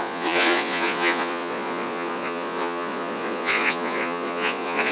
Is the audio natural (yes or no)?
no